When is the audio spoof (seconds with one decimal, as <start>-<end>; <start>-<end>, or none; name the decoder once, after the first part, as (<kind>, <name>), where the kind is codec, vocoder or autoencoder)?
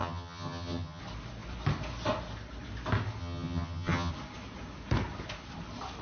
0.0-1.0 (vocoder, HiFi-GAN); 3.2-4.1